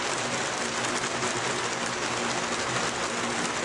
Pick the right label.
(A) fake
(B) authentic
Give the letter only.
B